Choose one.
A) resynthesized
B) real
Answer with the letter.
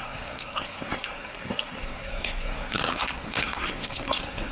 A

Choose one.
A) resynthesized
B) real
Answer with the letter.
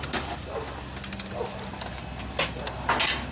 B